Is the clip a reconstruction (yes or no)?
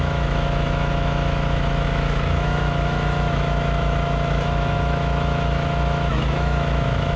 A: yes